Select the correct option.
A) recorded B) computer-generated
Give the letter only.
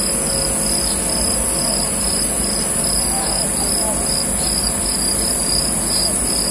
A